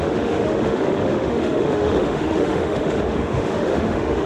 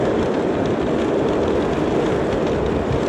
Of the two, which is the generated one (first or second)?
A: first